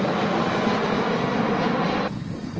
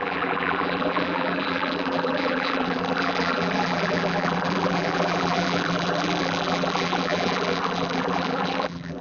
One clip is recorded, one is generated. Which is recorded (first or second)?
first